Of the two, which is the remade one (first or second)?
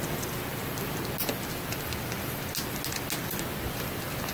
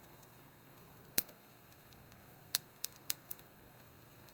second